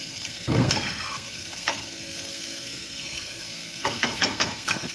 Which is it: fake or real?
fake